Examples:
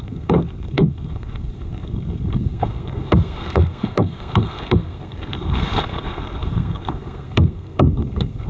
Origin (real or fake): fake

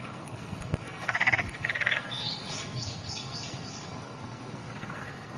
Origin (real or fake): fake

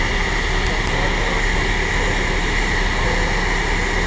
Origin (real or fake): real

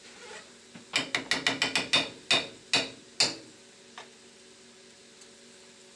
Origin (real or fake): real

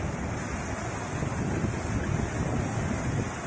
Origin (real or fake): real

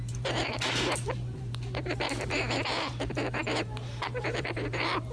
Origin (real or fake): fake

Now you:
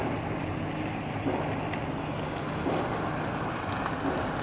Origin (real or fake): real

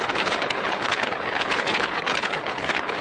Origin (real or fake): fake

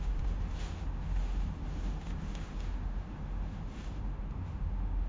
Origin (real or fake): fake